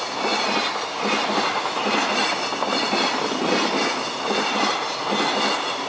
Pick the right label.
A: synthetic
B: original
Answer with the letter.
B